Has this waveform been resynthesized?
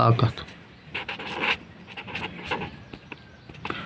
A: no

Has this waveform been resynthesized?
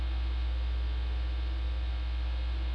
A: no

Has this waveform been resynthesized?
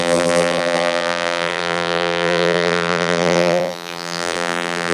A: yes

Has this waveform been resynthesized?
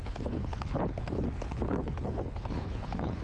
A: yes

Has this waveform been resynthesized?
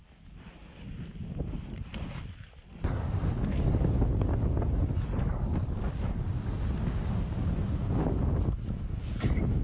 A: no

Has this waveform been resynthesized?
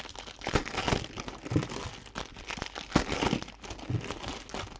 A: no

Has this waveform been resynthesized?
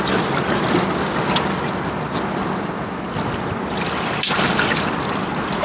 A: no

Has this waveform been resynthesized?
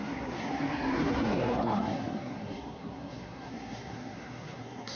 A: yes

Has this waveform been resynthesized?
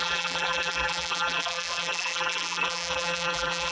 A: yes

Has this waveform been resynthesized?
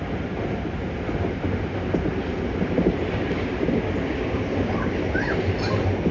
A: no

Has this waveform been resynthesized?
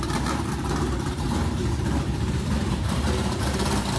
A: yes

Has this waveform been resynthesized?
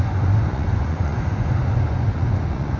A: yes